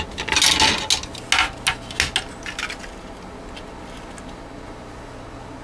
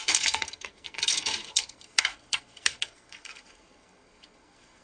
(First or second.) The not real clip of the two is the second